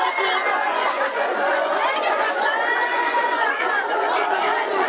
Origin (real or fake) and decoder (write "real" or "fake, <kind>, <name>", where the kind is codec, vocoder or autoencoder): fake, vocoder, Vocos